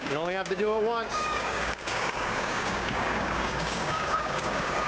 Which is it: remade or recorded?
remade